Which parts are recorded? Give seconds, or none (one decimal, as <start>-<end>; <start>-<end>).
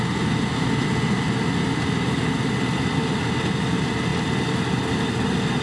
0.0-5.6